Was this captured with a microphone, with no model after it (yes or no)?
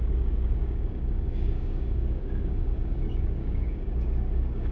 no